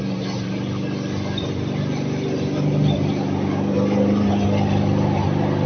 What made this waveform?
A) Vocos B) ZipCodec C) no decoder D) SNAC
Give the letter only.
C